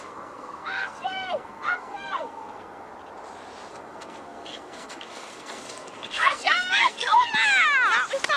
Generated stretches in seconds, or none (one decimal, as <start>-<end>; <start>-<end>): 0.0-2.9; 3.7-7.3